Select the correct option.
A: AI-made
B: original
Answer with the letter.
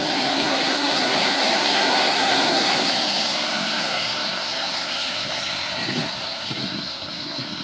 A